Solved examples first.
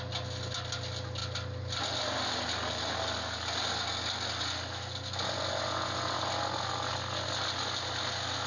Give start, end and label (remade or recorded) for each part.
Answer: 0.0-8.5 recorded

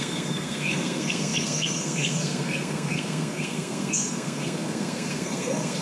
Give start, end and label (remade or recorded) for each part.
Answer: 0.0-5.8 remade

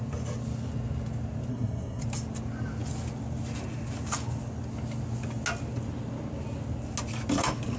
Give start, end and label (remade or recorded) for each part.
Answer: 0.0-1.5 recorded; 1.5-2.0 remade; 2.0-7.8 recorded